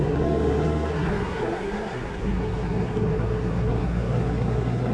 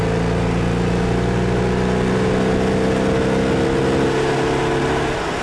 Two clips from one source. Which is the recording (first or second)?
second